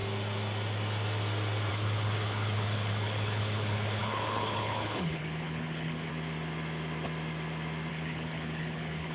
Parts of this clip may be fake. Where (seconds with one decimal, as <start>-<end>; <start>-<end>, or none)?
1.7-6.1; 7.9-9.1